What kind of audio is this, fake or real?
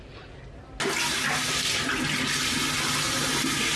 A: real